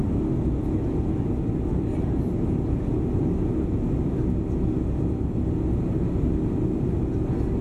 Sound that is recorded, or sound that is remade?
recorded